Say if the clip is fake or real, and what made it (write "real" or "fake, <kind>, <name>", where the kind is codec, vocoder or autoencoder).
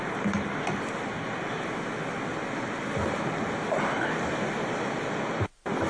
real